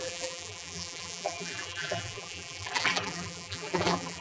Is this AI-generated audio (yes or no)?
yes